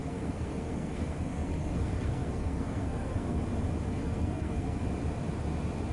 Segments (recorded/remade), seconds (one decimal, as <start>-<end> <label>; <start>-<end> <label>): 0.0-3.4 remade; 3.4-3.9 recorded; 3.9-4.8 remade; 4.8-5.9 recorded